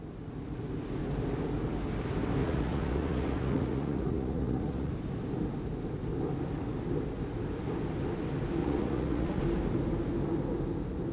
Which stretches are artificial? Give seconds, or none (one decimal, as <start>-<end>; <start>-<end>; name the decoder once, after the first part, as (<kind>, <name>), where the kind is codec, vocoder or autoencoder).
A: 2.4-4.9 (vocoder, Vocos); 8.6-9.4